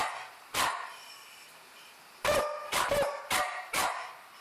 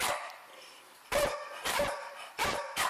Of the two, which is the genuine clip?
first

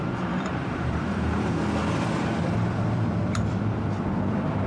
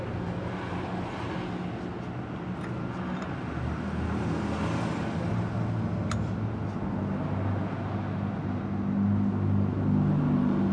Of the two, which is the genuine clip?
second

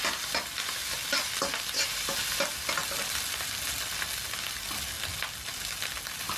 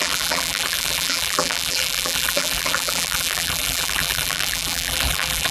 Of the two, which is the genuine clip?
first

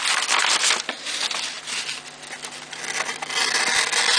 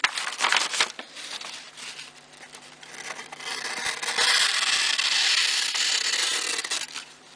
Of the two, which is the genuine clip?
first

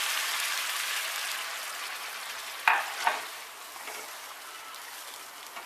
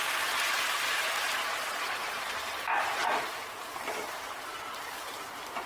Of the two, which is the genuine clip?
first